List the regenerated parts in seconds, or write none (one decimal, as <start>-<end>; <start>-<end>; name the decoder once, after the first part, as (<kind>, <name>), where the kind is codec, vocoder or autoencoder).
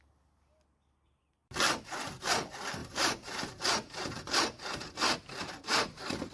2.8-6.3 (vocoder, BigVGAN v2)